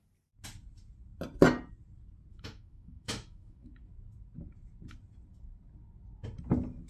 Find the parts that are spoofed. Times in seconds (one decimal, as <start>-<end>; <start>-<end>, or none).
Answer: 2.3-3.7